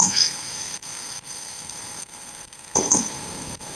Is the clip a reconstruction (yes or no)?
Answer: yes